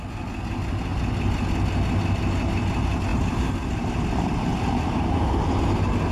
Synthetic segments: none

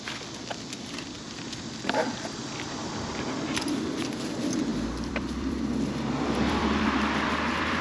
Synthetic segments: 4.7-7.8 (vocoder, BigVGAN v2)

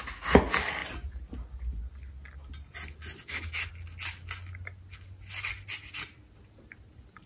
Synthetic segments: none

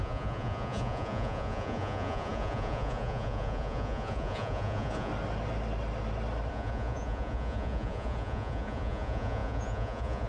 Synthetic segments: 0.0-5.1 (vocoder, Vocos); 6.5-10.3